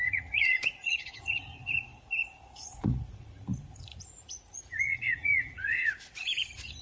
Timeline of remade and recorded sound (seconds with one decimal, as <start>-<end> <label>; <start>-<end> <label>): 0.0-6.8 remade